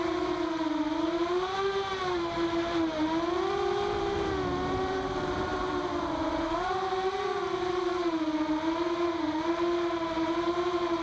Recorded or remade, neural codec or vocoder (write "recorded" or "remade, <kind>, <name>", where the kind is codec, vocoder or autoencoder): remade, vocoder, BigVGAN v2